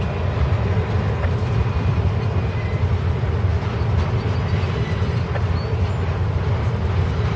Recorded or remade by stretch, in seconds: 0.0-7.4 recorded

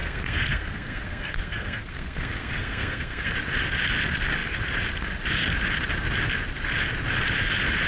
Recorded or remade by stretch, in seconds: 0.0-3.3 remade; 3.3-7.9 recorded

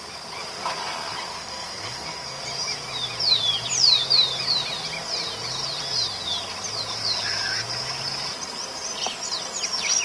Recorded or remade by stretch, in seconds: 0.0-1.3 recorded; 1.3-2.4 remade; 2.4-10.0 recorded

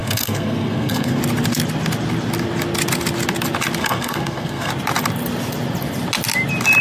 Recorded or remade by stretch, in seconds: 0.0-1.2 remade; 1.2-3.8 recorded; 3.8-4.7 remade; 4.7-6.8 recorded

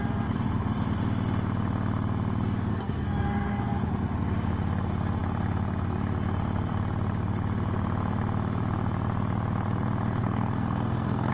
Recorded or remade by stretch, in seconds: 0.0-2.7 recorded; 2.7-3.6 remade; 3.6-10.2 recorded; 10.2-11.3 remade

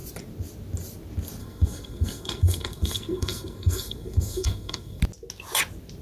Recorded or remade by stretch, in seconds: 0.0-1.4 recorded; 1.4-5.0 remade; 5.0-6.0 recorded

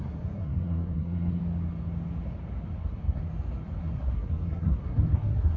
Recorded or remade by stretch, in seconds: 0.0-1.4 remade; 1.4-2.8 recorded; 2.8-3.2 remade; 3.2-3.8 recorded; 3.8-5.6 remade

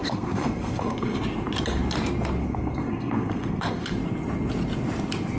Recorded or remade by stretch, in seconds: 0.0-1.2 remade; 1.2-2.4 recorded; 2.4-3.9 remade; 3.9-5.4 recorded